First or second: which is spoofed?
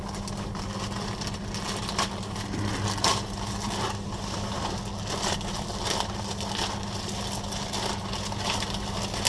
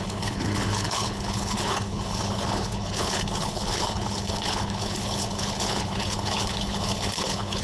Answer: second